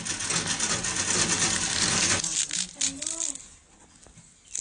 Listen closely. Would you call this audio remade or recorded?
recorded